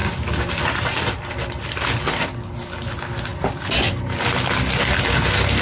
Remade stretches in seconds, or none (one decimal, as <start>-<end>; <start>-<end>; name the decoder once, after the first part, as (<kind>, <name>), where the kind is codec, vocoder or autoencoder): none